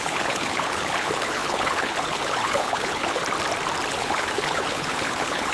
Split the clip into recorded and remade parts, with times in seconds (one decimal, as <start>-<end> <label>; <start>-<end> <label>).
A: 0.0-3.2 remade; 3.2-3.9 recorded; 3.9-5.5 remade